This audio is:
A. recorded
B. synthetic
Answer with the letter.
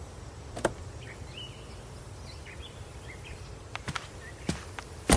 A